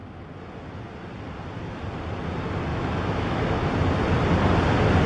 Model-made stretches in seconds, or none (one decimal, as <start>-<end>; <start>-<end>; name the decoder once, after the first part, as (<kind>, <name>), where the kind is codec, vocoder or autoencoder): 2.7-3.7 (autoencoder, DAC-VAE)